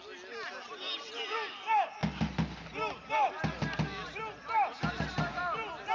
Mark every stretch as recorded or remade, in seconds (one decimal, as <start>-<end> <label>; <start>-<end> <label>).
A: 0.0-5.9 recorded